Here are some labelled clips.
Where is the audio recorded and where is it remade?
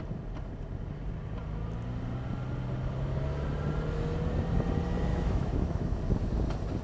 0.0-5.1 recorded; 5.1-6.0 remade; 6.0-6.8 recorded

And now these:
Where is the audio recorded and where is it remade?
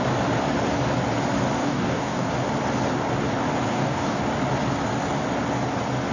0.0-1.6 recorded; 1.6-2.3 remade; 2.3-3.7 recorded; 3.7-4.2 remade; 4.2-6.1 recorded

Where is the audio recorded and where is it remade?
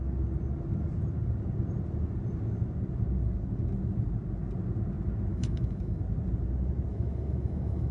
0.0-5.3 recorded; 5.3-6.0 remade; 6.0-6.9 recorded; 6.9-7.9 remade